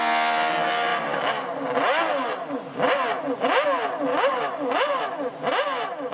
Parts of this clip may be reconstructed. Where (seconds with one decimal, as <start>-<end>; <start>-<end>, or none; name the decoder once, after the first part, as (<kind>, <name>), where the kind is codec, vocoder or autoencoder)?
4.1-5.0 (codec, DAC)

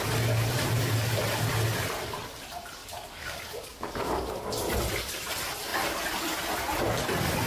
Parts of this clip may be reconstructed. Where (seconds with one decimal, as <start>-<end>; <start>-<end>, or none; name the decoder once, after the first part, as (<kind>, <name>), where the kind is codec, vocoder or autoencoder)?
2.8-4.4 (codec, DAC)

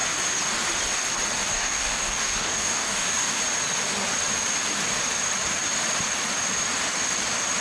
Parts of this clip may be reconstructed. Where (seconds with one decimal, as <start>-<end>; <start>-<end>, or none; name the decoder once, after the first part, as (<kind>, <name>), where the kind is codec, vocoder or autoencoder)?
1.5-3.4 (codec, DAC)

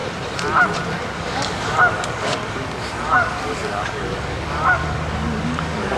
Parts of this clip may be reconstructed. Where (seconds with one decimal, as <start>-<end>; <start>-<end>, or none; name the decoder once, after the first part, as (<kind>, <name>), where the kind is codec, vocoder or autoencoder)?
0.9-6.0 (codec, DAC)

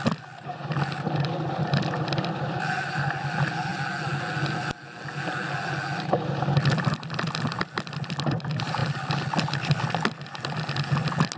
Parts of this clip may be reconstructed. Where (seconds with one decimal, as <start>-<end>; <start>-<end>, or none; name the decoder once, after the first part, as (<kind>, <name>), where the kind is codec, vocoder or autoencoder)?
none

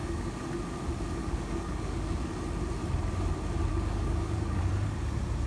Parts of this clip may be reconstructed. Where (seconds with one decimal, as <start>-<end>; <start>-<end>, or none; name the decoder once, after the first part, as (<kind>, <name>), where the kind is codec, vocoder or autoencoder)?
0.0-0.6 (codec, DAC); 1.2-2.3; 3.7-4.7

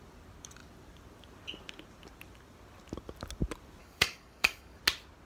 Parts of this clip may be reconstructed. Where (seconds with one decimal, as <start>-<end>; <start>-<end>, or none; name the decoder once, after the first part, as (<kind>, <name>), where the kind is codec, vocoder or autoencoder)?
3.8-4.8 (codec, DAC)

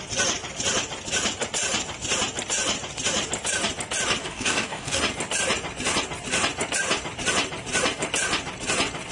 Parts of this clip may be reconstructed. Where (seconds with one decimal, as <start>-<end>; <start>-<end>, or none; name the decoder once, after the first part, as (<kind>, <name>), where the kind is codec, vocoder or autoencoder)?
4.2-5.0 (codec, DAC)